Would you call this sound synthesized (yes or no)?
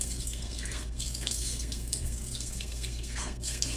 yes